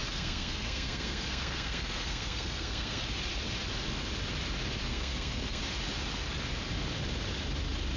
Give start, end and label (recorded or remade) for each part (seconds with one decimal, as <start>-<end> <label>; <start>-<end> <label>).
0.0-3.0 remade; 3.0-4.9 recorded; 4.9-5.6 remade; 5.6-8.0 recorded